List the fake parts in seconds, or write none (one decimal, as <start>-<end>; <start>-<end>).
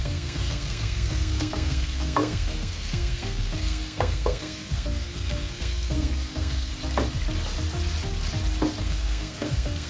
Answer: 0.0-6.7; 8.8-9.9